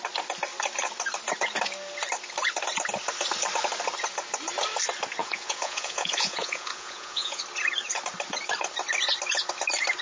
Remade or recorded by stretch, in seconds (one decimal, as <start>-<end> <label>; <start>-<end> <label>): 0.0-5.2 recorded; 5.2-7.4 remade; 7.4-10.0 recorded